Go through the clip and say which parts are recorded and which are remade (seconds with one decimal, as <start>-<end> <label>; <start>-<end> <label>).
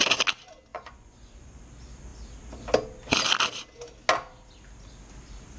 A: 0.0-0.7 recorded; 0.7-1.6 remade; 1.6-5.6 recorded